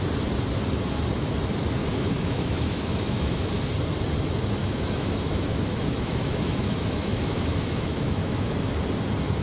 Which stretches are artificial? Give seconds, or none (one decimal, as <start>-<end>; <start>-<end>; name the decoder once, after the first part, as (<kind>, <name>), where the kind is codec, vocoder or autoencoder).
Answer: 1.8-3.6 (autoencoder, DAC-VAE); 4.6-8.5